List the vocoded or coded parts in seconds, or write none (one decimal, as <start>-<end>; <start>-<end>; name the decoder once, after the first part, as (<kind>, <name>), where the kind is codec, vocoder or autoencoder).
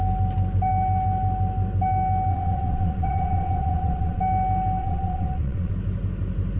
2.3-4.2 (vocoder, WaveNeXt); 4.8-5.7